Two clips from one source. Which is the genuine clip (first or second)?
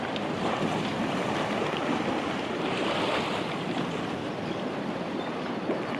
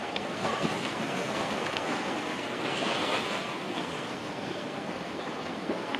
first